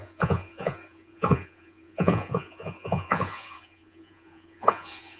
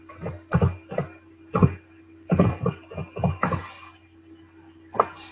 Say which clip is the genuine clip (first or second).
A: second